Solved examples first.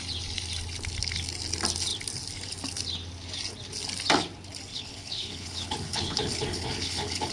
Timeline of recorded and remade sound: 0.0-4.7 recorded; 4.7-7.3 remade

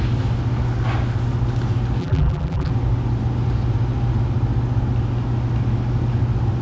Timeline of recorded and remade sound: 0.0-2.0 recorded; 2.0-2.7 remade; 2.7-6.6 recorded